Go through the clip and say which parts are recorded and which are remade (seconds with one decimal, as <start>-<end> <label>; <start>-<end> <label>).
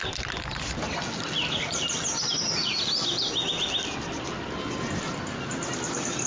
0.0-6.3 recorded